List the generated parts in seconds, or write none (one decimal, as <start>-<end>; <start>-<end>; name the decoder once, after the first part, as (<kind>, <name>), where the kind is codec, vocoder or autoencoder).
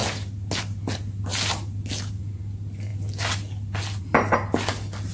none